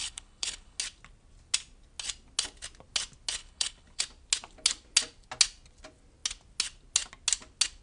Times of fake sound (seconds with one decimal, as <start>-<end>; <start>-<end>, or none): 0.0-0.8; 3.4-4.0